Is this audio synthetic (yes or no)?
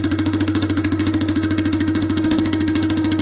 yes